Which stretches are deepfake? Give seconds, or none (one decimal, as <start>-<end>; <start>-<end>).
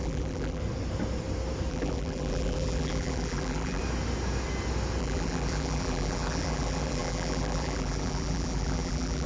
0.0-0.6; 1.7-3.8; 5.0-9.3